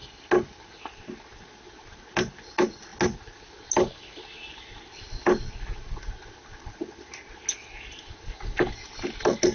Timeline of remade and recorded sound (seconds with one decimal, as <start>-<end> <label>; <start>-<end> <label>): 0.0-9.5 recorded